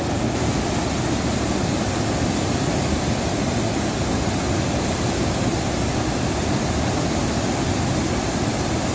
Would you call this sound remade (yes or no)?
no